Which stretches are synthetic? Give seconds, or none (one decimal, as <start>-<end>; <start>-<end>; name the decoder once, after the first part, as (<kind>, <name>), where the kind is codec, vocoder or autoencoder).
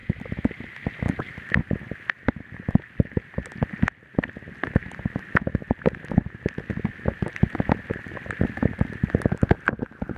none